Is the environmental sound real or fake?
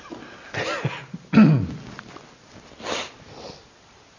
real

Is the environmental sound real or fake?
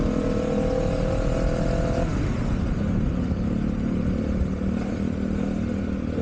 real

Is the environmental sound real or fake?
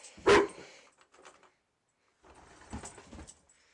real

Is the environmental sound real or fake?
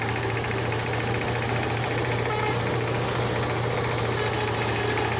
real